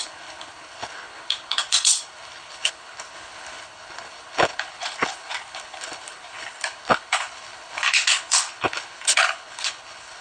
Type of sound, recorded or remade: remade